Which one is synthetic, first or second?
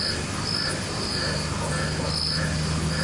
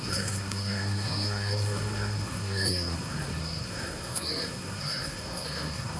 second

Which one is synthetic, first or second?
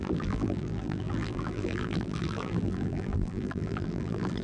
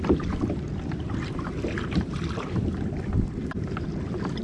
first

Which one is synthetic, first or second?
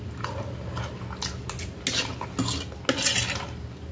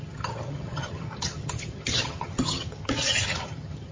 second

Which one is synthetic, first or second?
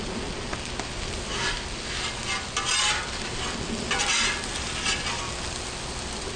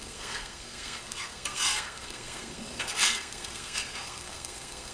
second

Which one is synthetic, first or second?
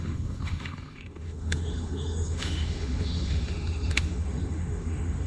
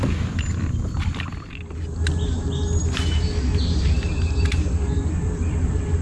first